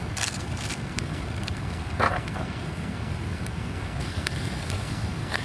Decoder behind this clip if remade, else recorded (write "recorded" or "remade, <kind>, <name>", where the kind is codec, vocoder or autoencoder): remade, codec, SNAC